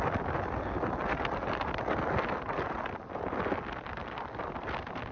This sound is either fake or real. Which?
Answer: real